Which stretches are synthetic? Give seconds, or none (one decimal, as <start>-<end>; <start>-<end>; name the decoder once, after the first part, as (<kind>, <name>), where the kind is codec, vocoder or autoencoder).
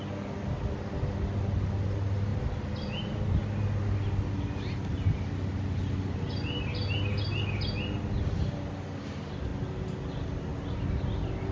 none